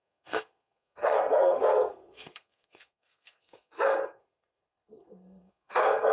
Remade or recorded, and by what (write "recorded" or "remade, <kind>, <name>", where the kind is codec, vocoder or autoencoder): remade, codec, SNAC